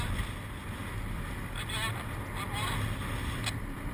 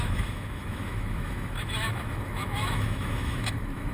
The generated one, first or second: second